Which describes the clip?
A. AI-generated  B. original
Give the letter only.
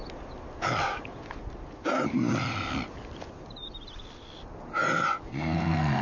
B